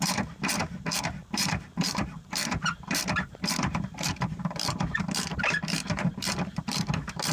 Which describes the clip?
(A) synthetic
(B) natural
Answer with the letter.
A